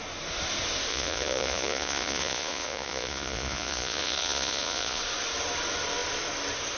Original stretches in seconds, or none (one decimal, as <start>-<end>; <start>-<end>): 0.0-0.9; 5.0-6.8